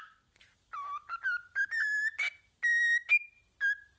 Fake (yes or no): no